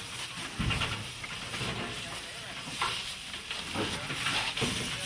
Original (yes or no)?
yes